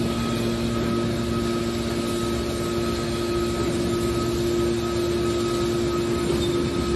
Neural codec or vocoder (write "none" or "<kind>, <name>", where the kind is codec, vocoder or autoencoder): none